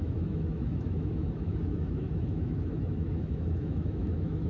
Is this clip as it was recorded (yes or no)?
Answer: no